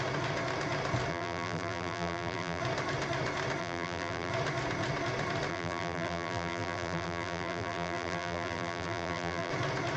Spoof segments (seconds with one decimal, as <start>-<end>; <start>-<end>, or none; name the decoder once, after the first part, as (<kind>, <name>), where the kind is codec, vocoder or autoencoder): 1.1-2.6 (vocoder, BigVGAN v2); 3.6-4.3; 5.5-9.5